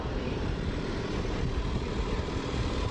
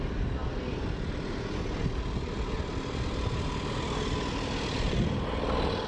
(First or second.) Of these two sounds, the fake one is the first